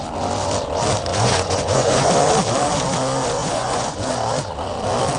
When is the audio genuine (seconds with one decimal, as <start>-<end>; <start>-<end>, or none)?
0.0-1.1; 2.1-3.4; 4.1-5.2